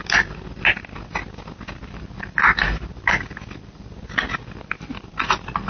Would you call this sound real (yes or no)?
yes